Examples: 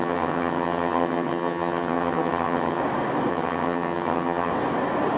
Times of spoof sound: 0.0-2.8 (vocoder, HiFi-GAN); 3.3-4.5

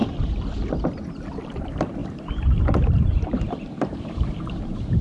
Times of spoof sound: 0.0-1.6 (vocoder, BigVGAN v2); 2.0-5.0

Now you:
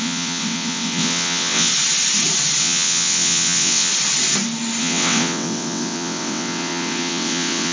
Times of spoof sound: 0.0-1.7 (vocoder, WaveNeXt); 2.6-3.9; 4.8-7.7

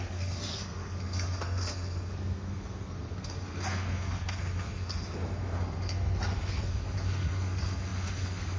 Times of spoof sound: 0.0-8.6 (codec, SNAC)

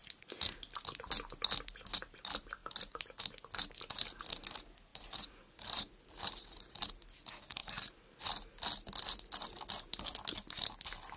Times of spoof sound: 2.6-3.2 (vocoder, BigVGAN v2); 4.9-6.8; 7.6-8.2

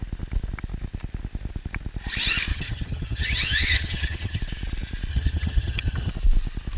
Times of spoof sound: 2.5-4.4 (vocoder, HiFi-GAN); 5.1-6.1

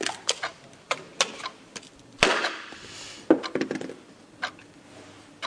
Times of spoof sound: none